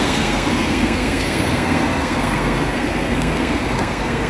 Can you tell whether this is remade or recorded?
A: remade